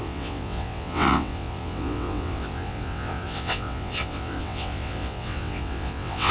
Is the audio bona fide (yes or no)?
no